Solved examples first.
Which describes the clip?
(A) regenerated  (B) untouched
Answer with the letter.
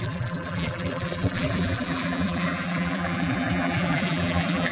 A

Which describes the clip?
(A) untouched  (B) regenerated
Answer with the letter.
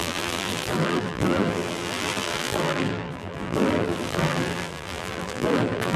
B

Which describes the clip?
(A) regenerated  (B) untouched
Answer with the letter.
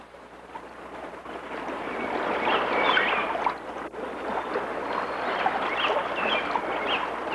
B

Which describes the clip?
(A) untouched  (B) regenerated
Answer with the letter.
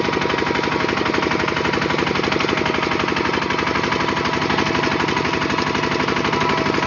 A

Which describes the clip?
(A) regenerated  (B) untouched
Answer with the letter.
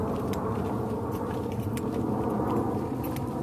B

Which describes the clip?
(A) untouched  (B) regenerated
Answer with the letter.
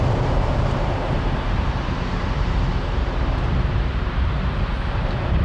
B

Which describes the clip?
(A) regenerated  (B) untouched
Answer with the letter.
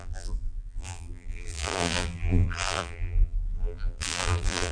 A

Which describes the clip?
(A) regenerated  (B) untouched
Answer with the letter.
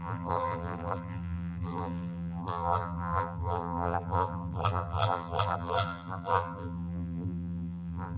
A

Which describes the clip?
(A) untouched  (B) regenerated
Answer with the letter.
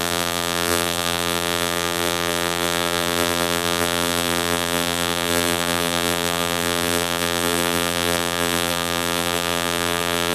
B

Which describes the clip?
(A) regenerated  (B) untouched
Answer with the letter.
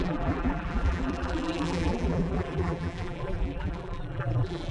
A